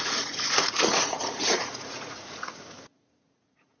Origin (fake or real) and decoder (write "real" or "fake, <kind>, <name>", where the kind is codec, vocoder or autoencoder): fake, vocoder, Vocos